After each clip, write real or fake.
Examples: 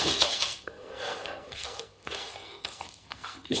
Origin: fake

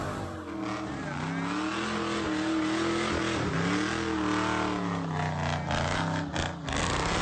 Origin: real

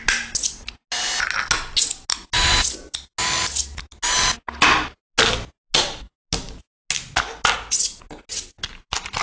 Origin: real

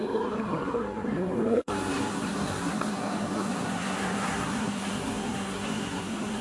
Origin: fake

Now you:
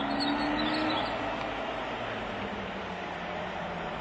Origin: real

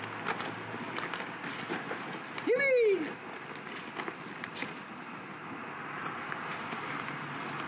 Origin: real